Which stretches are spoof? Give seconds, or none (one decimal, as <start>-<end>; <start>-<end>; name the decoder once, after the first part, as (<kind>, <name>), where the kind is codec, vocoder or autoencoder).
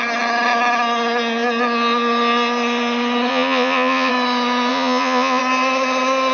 3.3-4.1 (vocoder, Vocos); 4.7-5.4